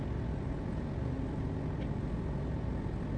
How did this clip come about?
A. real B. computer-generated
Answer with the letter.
A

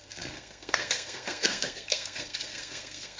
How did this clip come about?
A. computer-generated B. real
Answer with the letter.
A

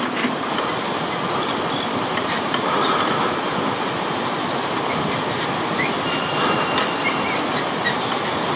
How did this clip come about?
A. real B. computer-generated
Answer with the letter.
A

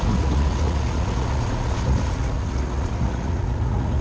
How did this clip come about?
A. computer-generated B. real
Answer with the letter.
A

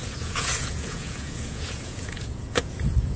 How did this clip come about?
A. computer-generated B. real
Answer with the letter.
A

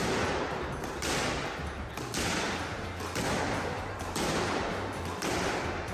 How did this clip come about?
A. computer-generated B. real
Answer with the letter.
B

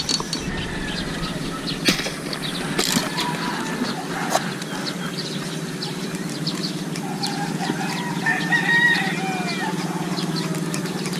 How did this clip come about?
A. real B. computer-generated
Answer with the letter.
A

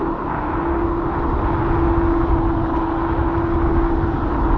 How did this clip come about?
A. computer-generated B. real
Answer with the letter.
B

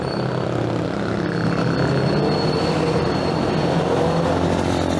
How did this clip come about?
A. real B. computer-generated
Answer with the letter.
A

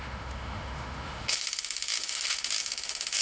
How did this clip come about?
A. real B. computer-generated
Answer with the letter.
B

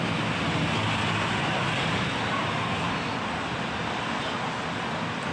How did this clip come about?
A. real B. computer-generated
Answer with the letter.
A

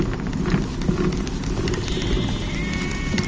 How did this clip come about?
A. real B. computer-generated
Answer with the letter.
B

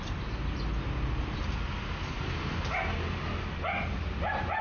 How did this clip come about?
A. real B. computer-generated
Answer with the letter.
A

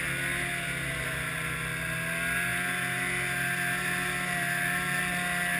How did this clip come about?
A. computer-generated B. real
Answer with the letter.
B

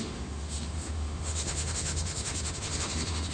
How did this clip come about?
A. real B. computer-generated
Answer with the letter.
B